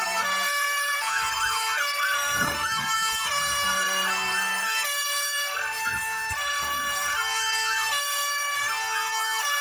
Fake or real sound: fake